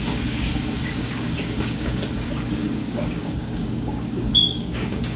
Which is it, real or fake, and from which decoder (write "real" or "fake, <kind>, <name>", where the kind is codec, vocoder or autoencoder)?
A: fake, codec, DAC